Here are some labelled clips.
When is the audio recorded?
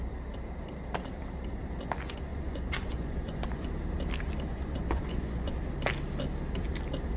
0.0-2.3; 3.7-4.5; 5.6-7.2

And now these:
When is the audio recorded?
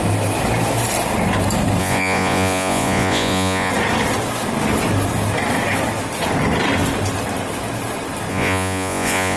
0.0-1.8; 3.7-8.3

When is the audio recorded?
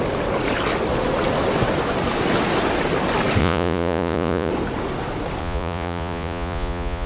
0.0-3.4; 4.5-5.4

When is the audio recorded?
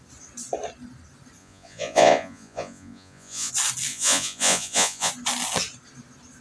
0.0-1.4; 3.5-3.9; 5.1-6.4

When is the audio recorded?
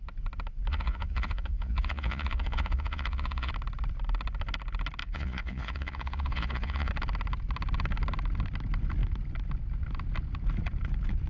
0.0-0.7; 3.5-5.0; 6.9-11.3